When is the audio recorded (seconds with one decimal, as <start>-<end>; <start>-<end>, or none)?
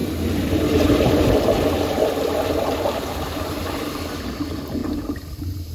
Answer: 3.4-4.8; 5.3-5.7